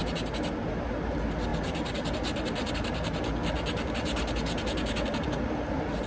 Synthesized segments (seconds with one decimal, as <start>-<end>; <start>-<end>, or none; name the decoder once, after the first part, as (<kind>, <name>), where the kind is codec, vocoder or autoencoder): none